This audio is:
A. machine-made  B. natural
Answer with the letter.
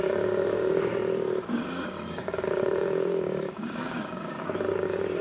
A